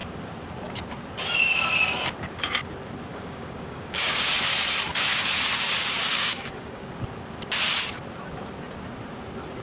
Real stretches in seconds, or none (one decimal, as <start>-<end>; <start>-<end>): 0.0-3.1; 4.3-6.1; 6.9-9.6